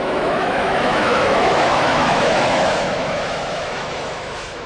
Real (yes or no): no